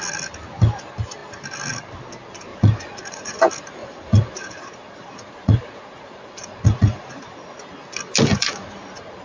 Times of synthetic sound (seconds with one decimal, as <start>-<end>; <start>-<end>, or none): 2.5-3.4; 3.8-7.7; 8.3-9.2

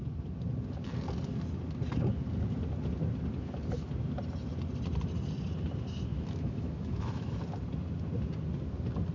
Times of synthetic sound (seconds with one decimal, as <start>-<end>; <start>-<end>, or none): 6.1-7.4